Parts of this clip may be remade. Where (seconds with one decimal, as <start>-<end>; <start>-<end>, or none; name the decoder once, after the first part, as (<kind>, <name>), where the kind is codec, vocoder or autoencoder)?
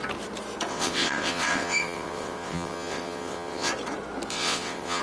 0.7-3.7 (vocoder, WaveNeXt); 4.3-5.0